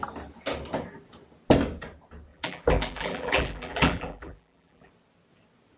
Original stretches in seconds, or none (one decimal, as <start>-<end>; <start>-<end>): 0.0-2.3; 4.9-5.8